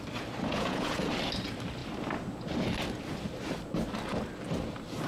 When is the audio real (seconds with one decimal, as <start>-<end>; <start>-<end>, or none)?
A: 0.0-0.5; 1.1-5.1